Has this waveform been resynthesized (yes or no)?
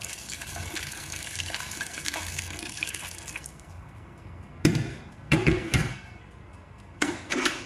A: yes